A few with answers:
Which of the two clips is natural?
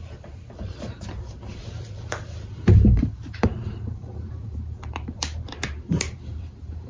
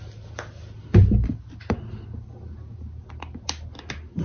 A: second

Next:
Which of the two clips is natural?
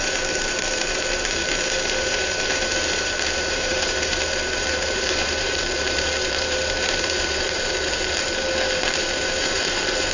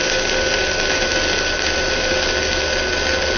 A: second